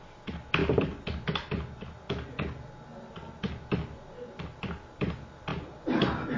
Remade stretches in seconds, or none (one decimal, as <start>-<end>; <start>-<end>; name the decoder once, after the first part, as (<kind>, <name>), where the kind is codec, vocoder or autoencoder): none

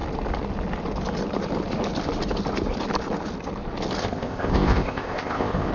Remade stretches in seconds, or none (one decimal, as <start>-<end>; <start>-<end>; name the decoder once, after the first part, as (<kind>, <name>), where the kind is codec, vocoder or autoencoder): 4.0-5.7 (codec, ZipCodec)

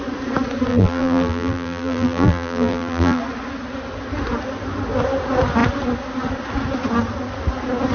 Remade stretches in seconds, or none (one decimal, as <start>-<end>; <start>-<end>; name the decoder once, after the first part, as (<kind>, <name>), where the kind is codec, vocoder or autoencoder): 0.7-3.2 (vocoder, BigVGAN v2)

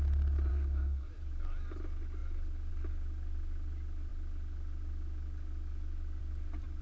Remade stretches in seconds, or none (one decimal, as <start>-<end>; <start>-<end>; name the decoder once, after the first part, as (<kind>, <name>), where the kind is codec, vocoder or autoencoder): 0.5-1.1 (codec, SNAC)